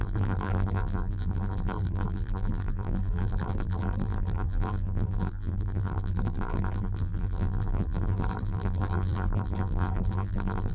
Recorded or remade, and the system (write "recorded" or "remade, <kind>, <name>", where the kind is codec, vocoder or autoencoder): remade, vocoder, BigVGAN v2